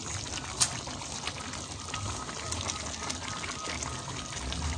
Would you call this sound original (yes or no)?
yes